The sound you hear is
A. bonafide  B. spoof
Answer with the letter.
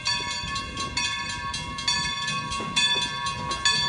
A